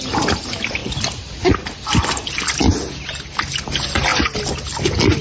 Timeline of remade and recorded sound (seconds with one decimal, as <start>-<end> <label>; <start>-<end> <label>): 0.0-5.2 recorded